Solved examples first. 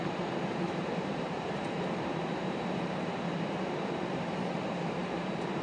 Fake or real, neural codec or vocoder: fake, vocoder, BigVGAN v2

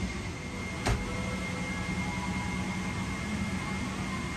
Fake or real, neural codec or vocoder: real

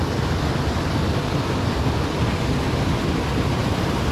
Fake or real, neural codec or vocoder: real